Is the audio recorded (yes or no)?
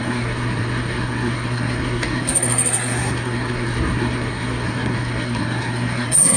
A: no